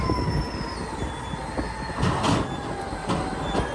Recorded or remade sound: recorded